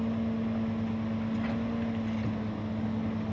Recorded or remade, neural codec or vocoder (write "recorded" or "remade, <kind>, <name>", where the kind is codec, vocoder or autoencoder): recorded